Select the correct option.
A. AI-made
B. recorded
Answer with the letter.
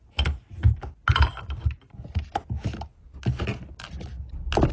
B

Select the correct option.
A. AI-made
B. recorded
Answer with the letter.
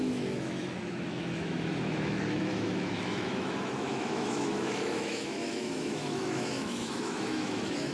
A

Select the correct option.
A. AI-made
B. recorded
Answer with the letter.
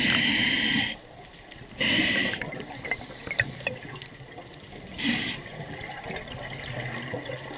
B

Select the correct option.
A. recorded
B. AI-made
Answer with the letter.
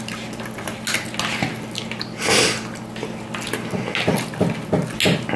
A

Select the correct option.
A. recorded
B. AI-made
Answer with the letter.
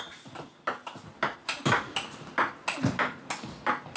A